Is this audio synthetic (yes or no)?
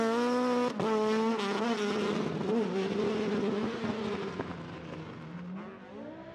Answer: no